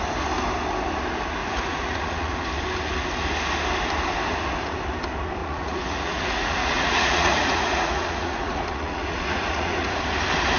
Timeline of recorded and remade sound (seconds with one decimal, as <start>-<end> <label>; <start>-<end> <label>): 0.0-1.4 recorded; 1.4-2.5 remade; 2.5-4.3 recorded; 4.3-4.8 remade; 4.8-5.4 recorded; 5.4-10.0 remade; 10.0-10.6 recorded

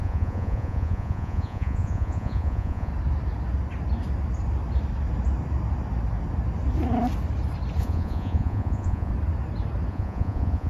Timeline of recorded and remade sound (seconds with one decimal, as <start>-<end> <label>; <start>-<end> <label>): 0.0-2.9 remade; 2.9-7.8 recorded; 7.8-9.1 remade; 9.1-9.9 recorded; 9.9-10.7 remade

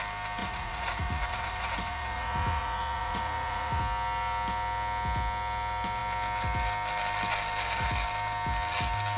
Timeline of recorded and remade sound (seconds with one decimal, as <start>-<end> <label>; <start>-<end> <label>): 0.0-0.4 recorded; 0.4-3.8 remade; 3.8-9.2 recorded

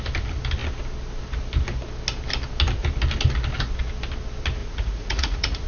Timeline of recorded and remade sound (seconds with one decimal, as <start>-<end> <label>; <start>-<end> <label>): 0.0-4.6 recorded; 4.6-5.7 remade

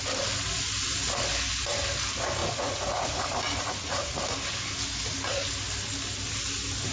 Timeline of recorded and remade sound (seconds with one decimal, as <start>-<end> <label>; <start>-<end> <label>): 0.0-2.4 recorded; 2.4-4.2 remade; 4.2-6.9 recorded